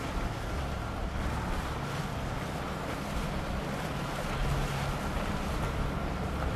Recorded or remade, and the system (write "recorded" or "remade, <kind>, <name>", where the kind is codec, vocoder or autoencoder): recorded